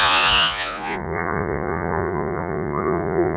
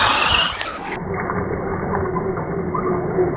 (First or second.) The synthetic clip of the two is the first